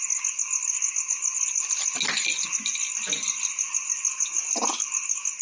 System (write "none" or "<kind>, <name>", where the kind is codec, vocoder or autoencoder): none